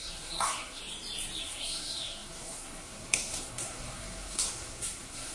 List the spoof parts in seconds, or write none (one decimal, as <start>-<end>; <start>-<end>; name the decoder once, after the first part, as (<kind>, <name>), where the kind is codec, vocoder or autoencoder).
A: 0.0-0.8 (codec, SNAC); 1.4-5.3